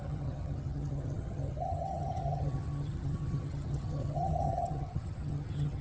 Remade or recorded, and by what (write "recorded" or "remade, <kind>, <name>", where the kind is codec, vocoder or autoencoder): remade, vocoder, HiFi-GAN